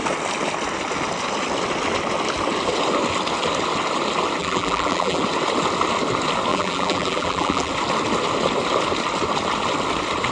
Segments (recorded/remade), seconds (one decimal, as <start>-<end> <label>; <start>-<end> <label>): 0.0-4.4 recorded; 4.4-5.2 remade; 5.2-6.5 recorded; 6.5-7.7 remade; 7.7-10.3 recorded